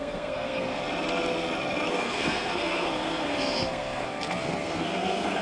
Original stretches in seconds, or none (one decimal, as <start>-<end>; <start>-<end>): 0.8-1.9